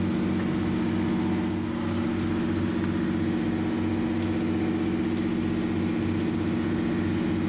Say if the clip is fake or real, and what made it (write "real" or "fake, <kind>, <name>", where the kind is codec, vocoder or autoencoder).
real